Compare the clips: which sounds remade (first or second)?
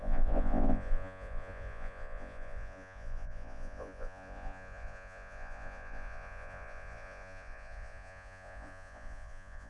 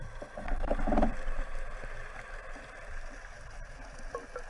first